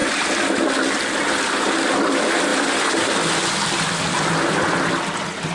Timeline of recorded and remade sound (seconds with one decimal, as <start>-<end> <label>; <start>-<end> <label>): 0.0-5.5 recorded